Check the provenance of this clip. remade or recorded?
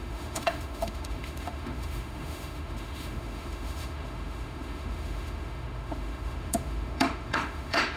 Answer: remade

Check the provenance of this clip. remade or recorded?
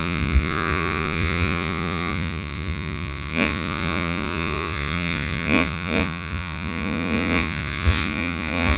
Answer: remade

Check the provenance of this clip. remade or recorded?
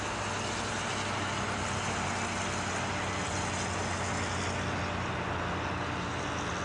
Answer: recorded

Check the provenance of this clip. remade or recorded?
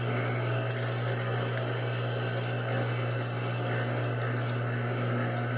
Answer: recorded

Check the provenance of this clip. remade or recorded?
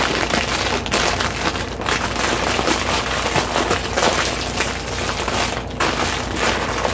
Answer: recorded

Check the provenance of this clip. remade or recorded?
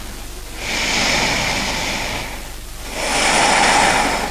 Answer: recorded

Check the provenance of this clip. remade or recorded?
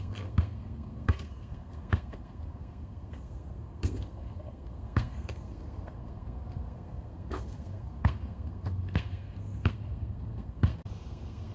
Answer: remade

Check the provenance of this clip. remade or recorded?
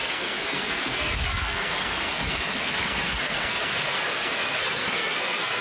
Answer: remade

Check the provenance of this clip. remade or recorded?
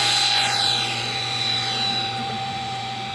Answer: remade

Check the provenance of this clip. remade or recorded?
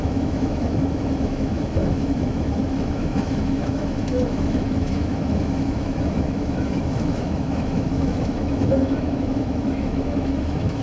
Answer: remade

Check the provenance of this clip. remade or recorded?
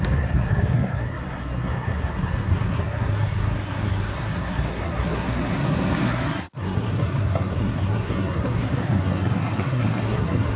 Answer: remade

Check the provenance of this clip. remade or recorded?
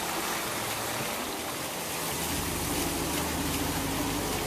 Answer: recorded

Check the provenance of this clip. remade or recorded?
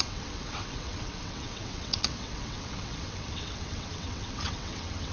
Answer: remade